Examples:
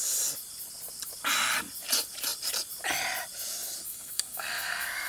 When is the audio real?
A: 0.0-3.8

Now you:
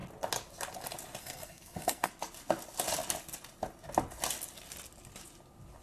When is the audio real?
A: 0.0-1.2; 2.1-5.8

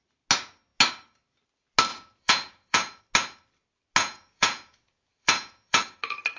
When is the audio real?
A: 0.0-1.9; 3.0-4.0; 5.8-6.4

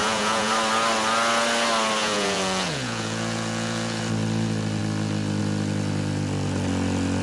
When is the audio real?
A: 0.5-2.0; 4.0-7.2

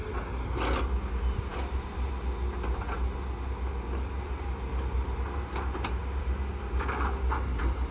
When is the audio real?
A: 0.0-7.9

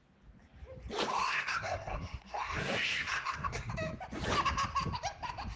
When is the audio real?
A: 0.0-1.1; 3.7-5.6

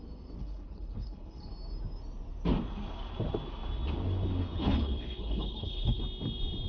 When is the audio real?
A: 0.0-0.4; 1.5-4.4; 6.0-6.7